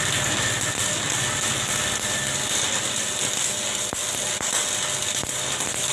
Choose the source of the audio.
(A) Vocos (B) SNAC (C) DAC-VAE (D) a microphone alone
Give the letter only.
D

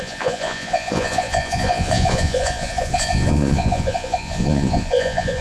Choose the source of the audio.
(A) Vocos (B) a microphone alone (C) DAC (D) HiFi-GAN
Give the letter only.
A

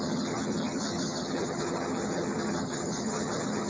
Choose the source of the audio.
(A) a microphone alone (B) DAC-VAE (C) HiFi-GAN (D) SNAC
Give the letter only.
C